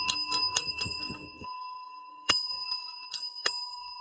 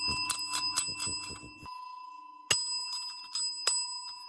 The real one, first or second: second